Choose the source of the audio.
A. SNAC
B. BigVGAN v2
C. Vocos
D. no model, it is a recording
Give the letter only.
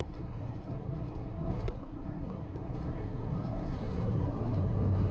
A